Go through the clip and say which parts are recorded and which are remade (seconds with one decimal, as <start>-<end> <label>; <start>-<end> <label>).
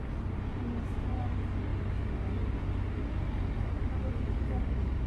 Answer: 0.0-5.1 recorded